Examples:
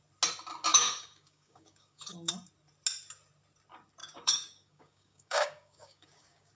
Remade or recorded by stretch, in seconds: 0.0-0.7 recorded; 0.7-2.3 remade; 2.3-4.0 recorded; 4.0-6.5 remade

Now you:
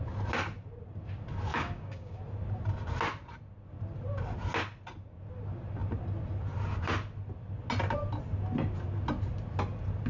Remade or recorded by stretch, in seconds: 0.0-1.5 recorded; 1.5-2.2 remade; 2.2-10.1 recorded

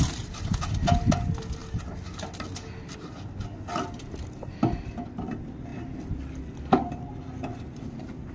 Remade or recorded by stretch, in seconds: 0.0-8.3 recorded

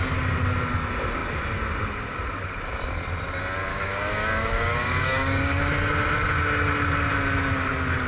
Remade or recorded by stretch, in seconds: 0.0-3.7 recorded; 3.7-5.7 remade; 5.7-8.1 recorded

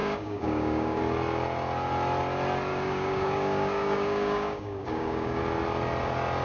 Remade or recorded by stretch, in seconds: 0.0-1.0 remade; 1.0-2.7 recorded; 2.7-5.4 remade; 5.4-6.4 recorded

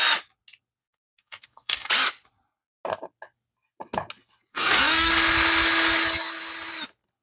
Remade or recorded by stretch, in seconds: 0.0-0.8 recorded; 0.8-1.9 remade; 1.9-4.5 recorded; 4.5-5.1 remade; 5.1-7.2 recorded

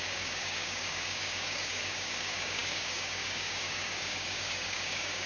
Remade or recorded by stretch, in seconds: 0.0-5.3 remade